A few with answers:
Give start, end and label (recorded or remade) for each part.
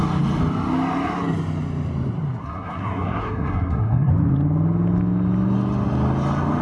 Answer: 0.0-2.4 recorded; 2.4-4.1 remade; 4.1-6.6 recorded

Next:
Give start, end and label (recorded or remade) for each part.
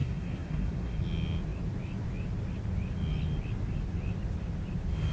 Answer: 0.0-1.0 remade; 1.0-5.1 recorded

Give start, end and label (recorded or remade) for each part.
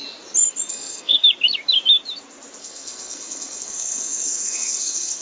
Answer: 0.0-0.7 recorded; 0.7-1.2 remade; 1.2-2.6 recorded; 2.6-5.2 remade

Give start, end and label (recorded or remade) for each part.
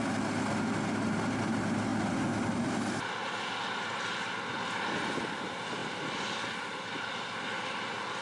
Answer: 0.0-8.2 recorded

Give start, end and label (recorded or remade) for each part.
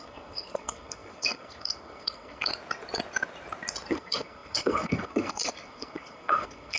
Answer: 0.0-2.5 remade; 2.5-3.9 recorded; 3.9-6.8 remade